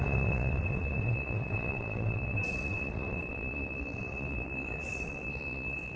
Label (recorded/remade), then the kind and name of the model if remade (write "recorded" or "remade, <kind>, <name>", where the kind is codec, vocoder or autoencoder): remade, vocoder, WaveNeXt